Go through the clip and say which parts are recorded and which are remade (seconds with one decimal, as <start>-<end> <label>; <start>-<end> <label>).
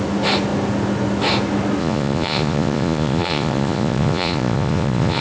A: 0.0-1.8 recorded; 1.8-5.2 remade